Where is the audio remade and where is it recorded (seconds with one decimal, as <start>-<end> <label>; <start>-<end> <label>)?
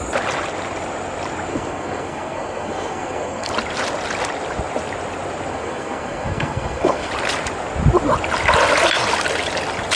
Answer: 0.0-1.5 recorded; 1.5-3.5 remade; 3.5-5.5 recorded; 5.5-7.1 remade; 7.1-10.0 recorded